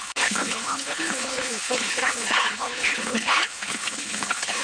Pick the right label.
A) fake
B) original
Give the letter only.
A